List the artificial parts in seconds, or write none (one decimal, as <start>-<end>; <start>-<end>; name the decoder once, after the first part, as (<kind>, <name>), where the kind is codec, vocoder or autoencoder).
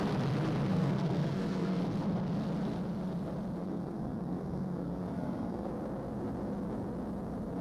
0.7-1.8 (codec, SNAC); 3.6-5.7